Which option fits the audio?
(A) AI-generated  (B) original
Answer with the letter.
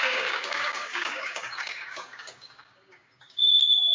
A